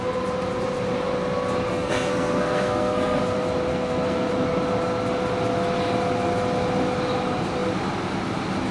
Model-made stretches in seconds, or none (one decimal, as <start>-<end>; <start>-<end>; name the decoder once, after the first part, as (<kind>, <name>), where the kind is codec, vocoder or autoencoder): 1.7-3.2 (codec, SNAC); 3.7-4.3